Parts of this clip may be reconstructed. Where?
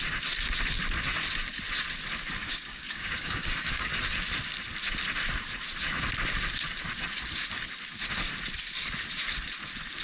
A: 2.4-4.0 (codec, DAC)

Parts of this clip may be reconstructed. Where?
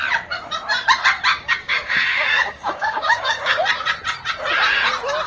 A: 1.3-3.6 (codec, DAC)